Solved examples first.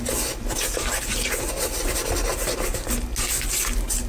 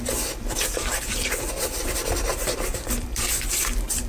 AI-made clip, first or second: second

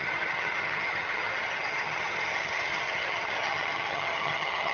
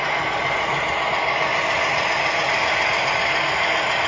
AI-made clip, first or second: first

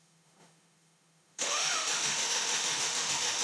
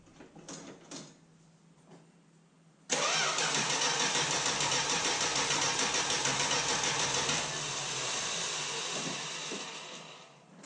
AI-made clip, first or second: first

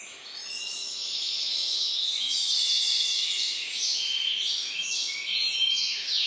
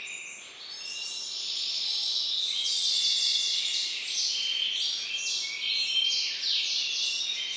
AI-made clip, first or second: first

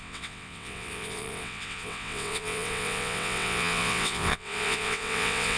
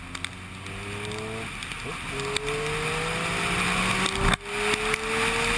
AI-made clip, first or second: first